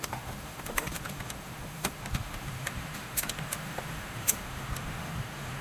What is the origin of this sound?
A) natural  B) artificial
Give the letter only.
B